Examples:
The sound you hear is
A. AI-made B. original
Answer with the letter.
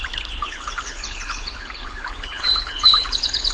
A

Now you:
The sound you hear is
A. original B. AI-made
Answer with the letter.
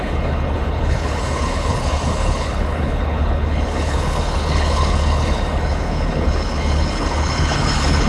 B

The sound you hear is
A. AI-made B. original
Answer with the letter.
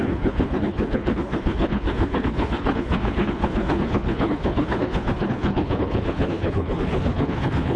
A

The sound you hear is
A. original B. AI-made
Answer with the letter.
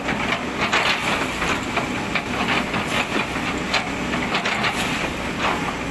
A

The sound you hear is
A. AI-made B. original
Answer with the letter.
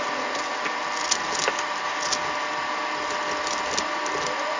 B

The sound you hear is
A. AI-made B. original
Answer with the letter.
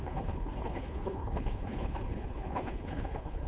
A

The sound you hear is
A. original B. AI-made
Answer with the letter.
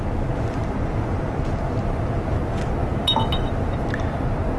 A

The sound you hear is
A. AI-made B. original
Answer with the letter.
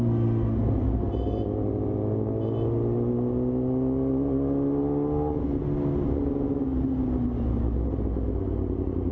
B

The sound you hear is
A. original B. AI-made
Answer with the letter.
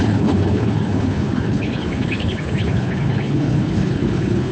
B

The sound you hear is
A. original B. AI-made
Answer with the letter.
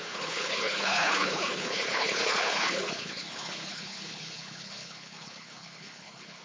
B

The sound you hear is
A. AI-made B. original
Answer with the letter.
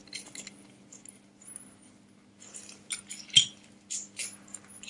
B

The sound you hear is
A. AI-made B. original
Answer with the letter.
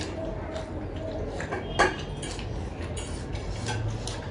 B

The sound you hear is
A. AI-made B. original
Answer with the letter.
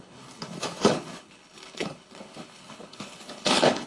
A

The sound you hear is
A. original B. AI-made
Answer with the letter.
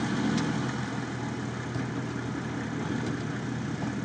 A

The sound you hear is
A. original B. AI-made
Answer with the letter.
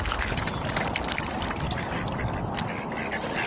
A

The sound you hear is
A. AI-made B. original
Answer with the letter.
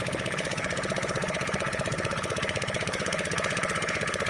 A